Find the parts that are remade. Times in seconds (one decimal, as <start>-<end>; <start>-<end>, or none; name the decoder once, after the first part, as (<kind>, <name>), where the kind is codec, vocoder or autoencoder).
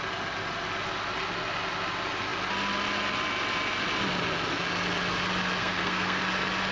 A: 5.6-6.2 (codec, SNAC)